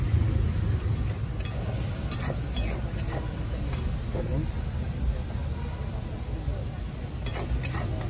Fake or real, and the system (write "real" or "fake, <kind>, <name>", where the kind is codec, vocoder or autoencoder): real